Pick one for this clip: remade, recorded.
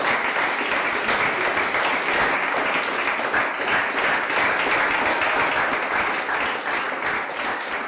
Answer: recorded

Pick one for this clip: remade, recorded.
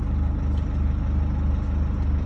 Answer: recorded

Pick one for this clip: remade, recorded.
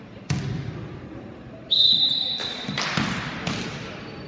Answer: recorded